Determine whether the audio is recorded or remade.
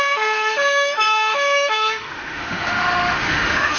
remade